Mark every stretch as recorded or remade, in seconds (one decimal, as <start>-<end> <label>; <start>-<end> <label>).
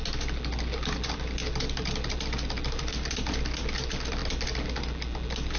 0.0-5.6 recorded